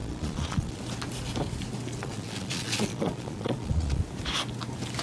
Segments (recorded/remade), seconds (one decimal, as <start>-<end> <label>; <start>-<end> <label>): 0.0-0.8 remade; 0.8-2.0 recorded; 2.0-4.0 remade; 4.0-5.0 recorded

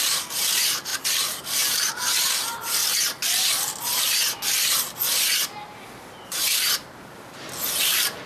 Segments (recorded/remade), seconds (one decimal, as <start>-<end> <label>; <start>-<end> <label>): 0.0-2.8 remade; 2.8-7.8 recorded; 7.8-8.3 remade